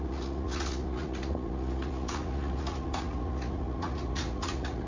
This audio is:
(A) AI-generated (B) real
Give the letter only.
A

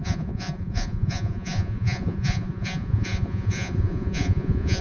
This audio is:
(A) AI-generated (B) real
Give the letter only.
A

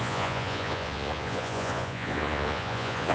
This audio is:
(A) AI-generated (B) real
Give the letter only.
A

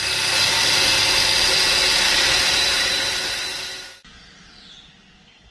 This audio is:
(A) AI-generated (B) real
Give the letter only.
B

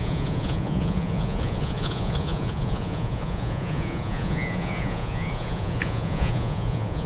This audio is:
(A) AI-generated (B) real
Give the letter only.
A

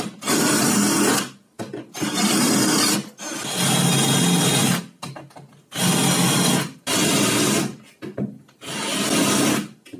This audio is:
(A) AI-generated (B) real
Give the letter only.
B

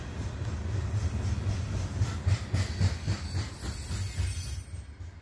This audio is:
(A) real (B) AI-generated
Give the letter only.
A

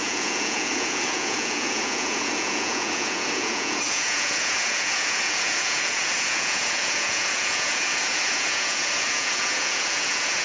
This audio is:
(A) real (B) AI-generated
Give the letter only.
B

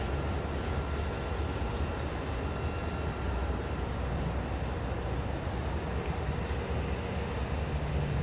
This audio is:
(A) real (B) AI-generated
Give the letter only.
A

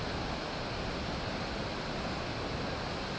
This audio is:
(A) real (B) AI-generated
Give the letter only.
A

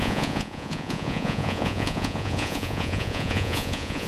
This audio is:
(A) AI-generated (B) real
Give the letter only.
A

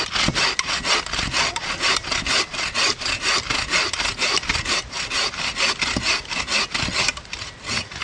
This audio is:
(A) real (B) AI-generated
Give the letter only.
A